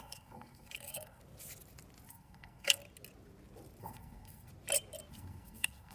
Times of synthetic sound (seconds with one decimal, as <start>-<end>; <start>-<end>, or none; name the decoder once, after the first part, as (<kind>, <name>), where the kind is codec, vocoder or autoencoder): 0.0-1.2 (codec, SNAC); 2.1-2.8; 3.8-4.5; 5.1-5.9